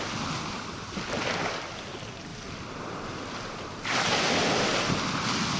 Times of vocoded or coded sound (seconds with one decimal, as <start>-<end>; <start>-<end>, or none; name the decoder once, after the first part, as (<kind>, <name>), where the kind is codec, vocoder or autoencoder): 2.3-4.2 (vocoder, BigVGAN v2)